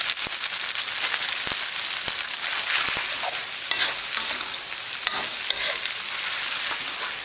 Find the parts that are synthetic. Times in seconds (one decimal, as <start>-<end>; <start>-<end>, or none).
none